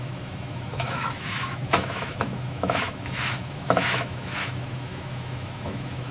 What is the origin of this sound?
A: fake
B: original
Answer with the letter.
A